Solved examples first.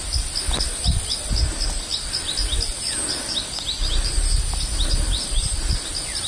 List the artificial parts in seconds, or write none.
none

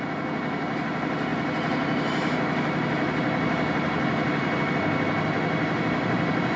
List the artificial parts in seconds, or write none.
none

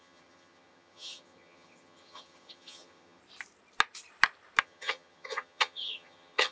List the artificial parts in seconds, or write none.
0.0-3.2; 4.6-6.5

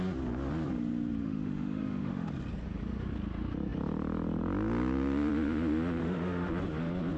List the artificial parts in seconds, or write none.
1.2-2.3; 6.0-6.5

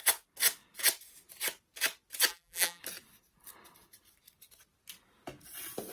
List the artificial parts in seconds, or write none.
2.3-2.8